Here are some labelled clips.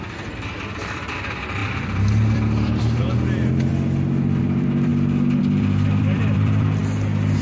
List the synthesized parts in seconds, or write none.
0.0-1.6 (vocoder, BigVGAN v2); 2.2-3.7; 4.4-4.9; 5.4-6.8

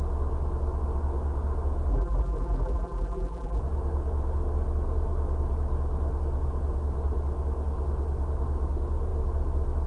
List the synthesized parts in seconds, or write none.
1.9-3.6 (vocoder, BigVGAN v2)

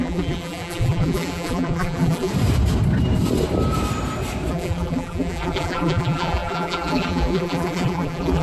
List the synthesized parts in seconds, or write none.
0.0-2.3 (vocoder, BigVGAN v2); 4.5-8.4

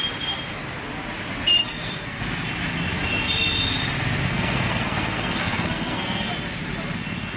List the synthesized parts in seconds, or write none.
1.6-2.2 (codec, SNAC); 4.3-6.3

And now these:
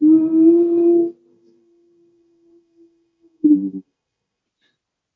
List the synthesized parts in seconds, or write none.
1.3-4.4 (codec, SNAC)

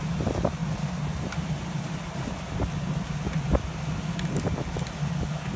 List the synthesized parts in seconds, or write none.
none